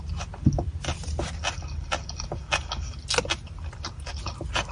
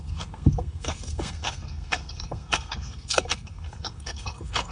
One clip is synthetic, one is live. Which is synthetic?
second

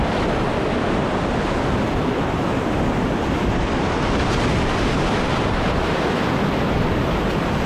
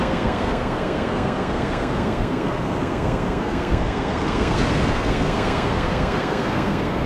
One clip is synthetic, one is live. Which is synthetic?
second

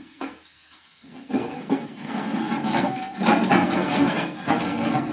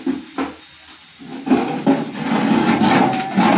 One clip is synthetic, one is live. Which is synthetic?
first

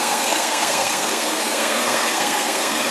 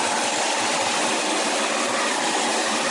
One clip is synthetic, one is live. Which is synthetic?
first